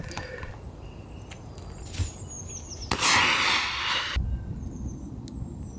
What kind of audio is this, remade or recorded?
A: recorded